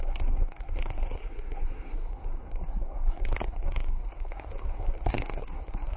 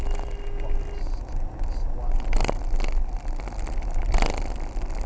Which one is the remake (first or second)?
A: first